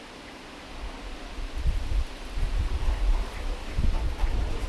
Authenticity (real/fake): real